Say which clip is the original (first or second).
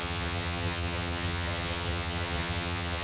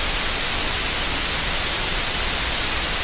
second